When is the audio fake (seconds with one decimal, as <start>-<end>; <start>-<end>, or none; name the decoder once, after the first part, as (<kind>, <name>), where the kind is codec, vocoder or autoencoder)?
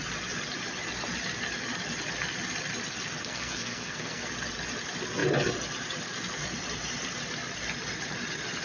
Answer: 3.2-4.3 (codec, SNAC)